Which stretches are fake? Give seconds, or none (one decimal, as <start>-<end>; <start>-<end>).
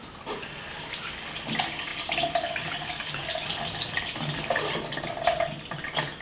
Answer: none